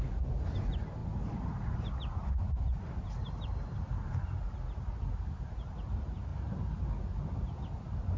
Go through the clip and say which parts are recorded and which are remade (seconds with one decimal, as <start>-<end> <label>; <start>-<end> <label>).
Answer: 0.0-3.2 recorded; 3.2-3.8 remade; 3.8-8.2 recorded